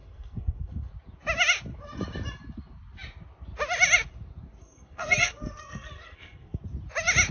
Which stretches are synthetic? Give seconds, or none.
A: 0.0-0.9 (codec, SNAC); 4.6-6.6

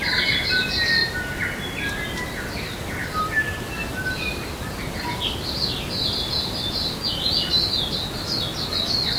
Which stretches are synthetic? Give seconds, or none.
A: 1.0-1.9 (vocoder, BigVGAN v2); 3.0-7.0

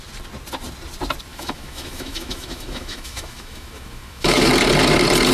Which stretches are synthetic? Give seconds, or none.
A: 1.3-4.5 (autoencoder, DAC-VAE)